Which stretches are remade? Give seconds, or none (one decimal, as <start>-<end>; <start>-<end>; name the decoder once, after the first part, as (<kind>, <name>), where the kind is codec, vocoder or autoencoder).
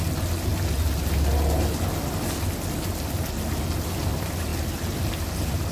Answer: none